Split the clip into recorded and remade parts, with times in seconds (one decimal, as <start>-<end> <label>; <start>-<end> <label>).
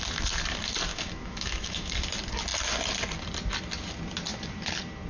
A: 0.0-0.9 recorded; 0.9-1.9 remade; 1.9-5.1 recorded